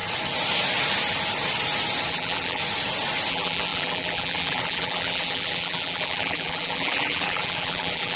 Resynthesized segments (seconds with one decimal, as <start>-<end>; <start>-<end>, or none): 2.1-2.6; 3.3-8.2